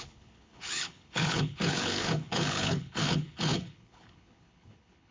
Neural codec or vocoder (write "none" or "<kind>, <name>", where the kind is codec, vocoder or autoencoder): codec, HILCodec